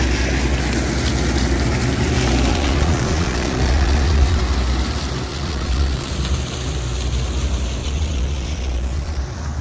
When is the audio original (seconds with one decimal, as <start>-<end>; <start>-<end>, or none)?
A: 0.0-2.5; 4.4-5.3; 6.1-7.8; 9.2-9.6